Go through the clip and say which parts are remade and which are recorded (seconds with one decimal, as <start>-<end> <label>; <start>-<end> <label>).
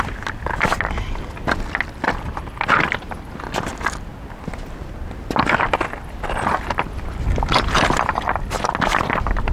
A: 0.0-9.5 recorded